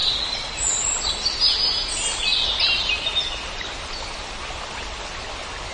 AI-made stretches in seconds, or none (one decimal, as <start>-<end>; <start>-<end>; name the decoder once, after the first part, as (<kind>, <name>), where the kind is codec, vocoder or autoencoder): none

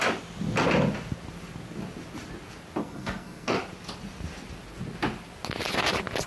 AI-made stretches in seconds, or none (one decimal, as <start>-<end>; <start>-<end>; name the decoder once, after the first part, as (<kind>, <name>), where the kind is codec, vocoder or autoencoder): 2.8-3.6 (codec, SNAC)

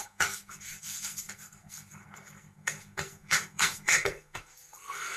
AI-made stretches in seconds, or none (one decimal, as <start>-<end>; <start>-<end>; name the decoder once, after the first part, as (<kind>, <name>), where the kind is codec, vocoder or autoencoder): 0.0-5.2 (codec, SNAC)